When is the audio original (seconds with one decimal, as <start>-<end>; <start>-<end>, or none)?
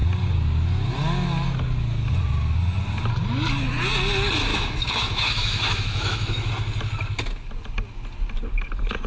0.0-4.5; 6.5-9.1